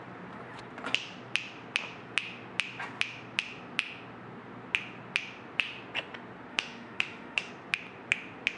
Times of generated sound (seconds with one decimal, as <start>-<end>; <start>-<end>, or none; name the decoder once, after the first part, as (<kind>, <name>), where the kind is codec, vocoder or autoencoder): 6.5-7.5 (autoencoder, DAC-VAE)